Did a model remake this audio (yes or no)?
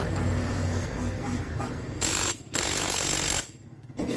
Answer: yes